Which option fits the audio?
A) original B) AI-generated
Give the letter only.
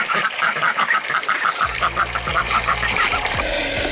A